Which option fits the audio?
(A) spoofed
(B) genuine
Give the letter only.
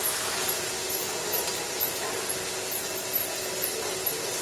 B